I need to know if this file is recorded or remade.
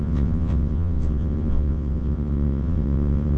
remade